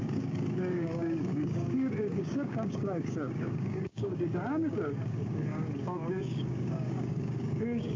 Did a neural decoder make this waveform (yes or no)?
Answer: yes